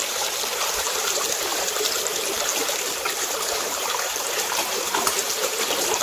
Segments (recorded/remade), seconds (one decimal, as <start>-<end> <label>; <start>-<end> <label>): 0.0-6.0 remade